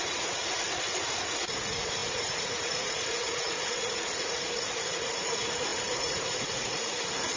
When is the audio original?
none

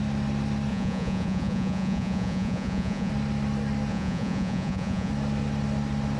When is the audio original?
0.0-0.7; 3.1-3.9; 5.1-6.2

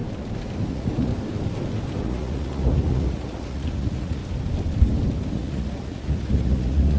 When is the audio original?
0.0-0.7; 1.1-2.0; 4.2-5.3

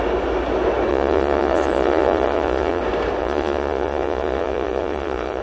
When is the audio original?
0.0-0.9; 2.8-3.2

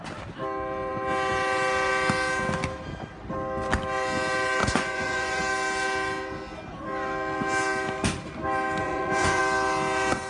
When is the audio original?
0.0-4.6; 5.4-8.8; 9.4-10.3